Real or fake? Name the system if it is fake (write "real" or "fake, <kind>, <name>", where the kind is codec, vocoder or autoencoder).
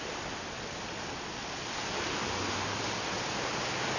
real